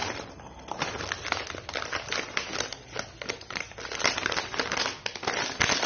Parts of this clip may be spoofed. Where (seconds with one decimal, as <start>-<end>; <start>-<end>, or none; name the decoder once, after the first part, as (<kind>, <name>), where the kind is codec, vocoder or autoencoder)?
0.0-0.8 (vocoder, BigVGAN v2); 2.1-4.8